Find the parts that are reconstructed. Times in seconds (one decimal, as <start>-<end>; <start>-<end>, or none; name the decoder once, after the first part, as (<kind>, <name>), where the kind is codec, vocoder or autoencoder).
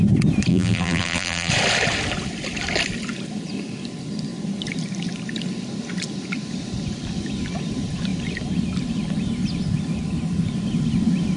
0.5-1.5 (vocoder, BigVGAN v2)